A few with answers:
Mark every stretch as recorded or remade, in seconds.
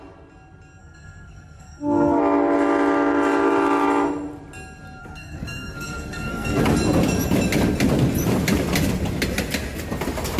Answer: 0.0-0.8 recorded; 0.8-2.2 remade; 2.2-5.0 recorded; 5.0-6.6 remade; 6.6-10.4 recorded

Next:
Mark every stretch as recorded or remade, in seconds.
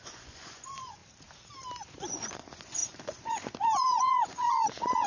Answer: 0.0-1.0 remade; 1.0-2.1 recorded; 2.1-5.1 remade